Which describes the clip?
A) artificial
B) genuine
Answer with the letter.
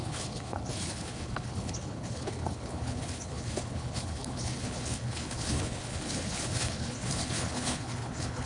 A